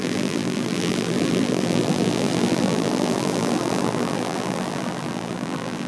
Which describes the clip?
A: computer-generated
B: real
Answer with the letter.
A